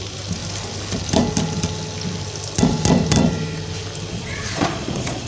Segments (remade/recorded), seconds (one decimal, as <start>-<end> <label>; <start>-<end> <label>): 0.0-4.1 recorded; 4.1-5.3 remade